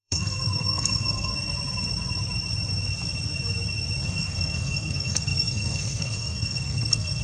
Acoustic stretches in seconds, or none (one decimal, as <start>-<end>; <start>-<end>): 1.3-4.0